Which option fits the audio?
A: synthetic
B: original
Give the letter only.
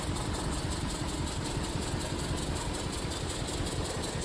B